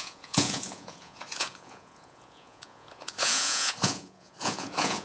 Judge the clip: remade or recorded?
remade